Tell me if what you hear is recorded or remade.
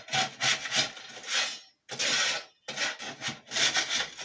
recorded